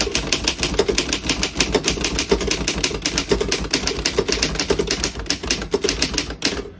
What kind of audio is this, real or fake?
real